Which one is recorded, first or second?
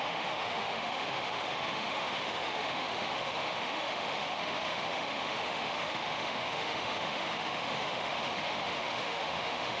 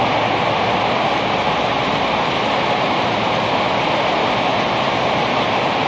second